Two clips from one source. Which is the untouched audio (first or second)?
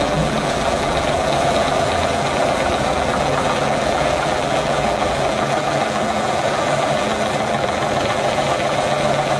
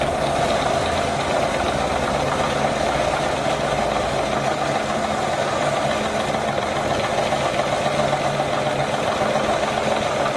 second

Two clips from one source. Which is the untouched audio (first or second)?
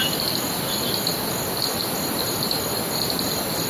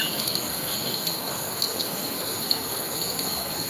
first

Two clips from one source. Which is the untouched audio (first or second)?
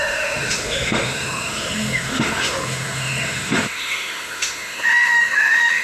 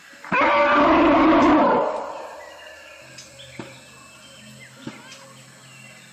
second